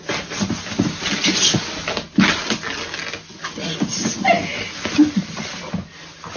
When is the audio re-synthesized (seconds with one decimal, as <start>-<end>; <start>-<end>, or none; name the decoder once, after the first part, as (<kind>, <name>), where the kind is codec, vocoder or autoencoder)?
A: 4.5-5.5 (vocoder, BigVGAN v2)